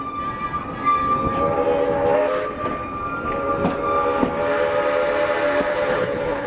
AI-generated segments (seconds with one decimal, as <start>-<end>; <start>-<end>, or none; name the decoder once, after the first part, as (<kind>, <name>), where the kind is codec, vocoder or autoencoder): 5.7-6.5 (codec, HILCodec)